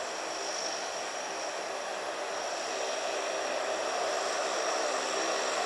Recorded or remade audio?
recorded